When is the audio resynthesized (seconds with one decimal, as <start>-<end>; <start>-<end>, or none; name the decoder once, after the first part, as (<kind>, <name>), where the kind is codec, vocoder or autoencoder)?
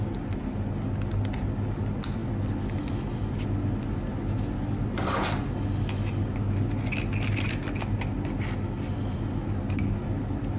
none